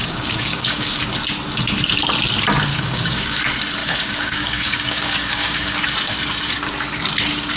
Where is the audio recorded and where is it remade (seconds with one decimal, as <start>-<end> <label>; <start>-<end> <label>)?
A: 0.0-1.0 remade; 1.0-2.7 recorded; 2.7-3.4 remade; 3.4-3.8 recorded; 3.8-5.8 remade; 5.8-7.6 recorded